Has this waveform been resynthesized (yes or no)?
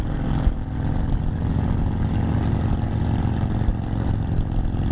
no